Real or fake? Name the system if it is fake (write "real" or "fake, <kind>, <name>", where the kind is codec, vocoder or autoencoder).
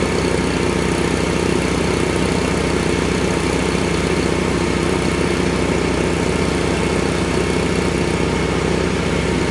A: real